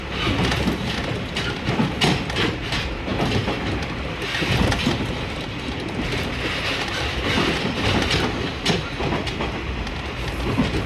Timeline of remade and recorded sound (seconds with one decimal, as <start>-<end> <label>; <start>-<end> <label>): 0.0-10.9 recorded